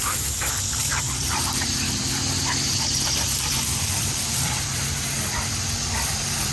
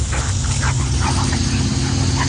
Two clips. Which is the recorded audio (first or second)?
second